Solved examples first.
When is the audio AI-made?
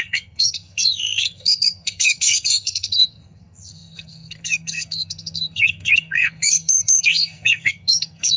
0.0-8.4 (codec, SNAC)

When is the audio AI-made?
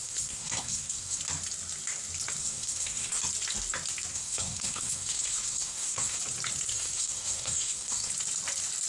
0.0-1.2 (codec, SNAC); 2.4-3.2; 4.1-6.2; 6.7-8.1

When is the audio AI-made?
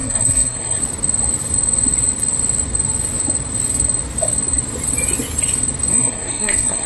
0.0-0.8 (codec, SNAC); 5.9-6.9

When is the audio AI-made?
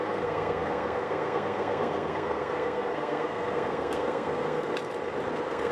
0.0-4.7 (codec, SNAC); 5.3-5.7